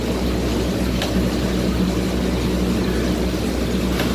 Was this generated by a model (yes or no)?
no